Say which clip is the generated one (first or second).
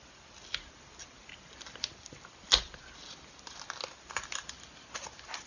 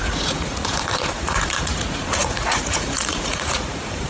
second